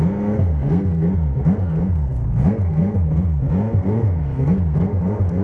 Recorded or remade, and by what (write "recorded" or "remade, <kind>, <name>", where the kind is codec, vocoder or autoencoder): remade, codec, SNAC